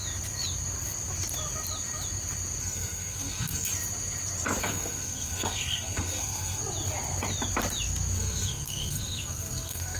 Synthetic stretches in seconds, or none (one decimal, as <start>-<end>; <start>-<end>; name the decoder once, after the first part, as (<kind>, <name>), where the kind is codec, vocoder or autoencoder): 2.6-3.7 (codec, SNAC); 4.6-6.6; 8.2-10.0

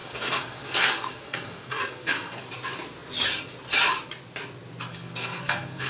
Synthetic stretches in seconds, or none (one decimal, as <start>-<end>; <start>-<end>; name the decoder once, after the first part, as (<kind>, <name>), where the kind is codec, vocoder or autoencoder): 0.0-2.4 (codec, SNAC); 4.9-5.9